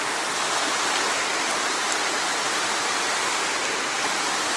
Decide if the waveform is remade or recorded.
recorded